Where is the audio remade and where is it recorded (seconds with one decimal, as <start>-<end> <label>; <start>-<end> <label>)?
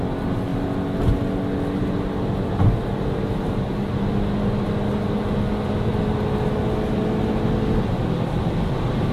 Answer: 0.0-9.1 recorded